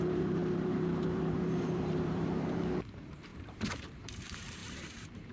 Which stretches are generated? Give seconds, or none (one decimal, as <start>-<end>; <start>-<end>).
0.0-5.3